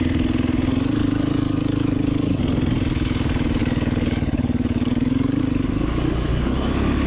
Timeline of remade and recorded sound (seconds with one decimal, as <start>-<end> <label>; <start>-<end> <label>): 0.0-1.0 recorded; 1.0-2.4 remade; 2.4-3.6 recorded; 3.6-5.4 remade; 5.4-6.3 recorded; 6.3-7.1 remade